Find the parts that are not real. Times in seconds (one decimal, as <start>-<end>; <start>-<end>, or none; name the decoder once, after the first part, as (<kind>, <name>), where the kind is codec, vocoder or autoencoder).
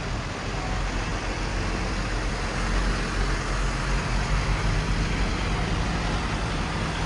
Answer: none